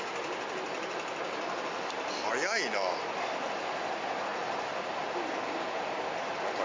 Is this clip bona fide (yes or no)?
yes